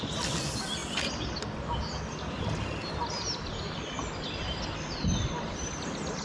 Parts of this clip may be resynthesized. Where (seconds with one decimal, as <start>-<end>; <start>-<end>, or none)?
none